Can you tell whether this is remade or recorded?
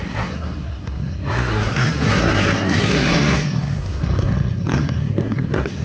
remade